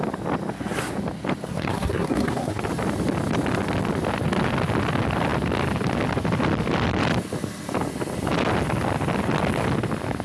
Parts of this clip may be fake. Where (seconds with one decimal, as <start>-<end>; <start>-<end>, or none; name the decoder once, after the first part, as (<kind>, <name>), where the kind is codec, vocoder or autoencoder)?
1.5-2.6 (codec, SNAC)